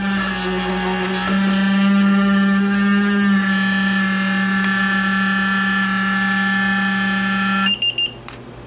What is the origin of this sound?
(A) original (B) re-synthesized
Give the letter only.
A